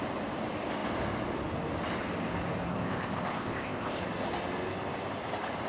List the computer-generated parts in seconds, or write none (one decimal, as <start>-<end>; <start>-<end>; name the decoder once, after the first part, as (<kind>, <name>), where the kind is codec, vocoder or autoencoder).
2.7-4.0 (codec, ZipCodec)